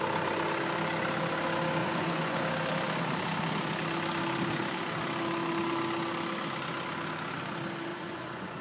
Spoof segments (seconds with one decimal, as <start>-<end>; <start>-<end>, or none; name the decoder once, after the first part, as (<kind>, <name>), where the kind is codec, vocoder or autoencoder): 1.8-2.4 (vocoder, Vocos); 7.9-8.6